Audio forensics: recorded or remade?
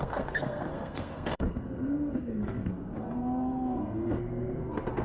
remade